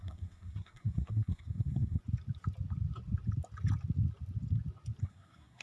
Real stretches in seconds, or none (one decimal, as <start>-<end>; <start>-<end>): 2.0-5.0